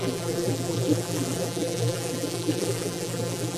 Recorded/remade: remade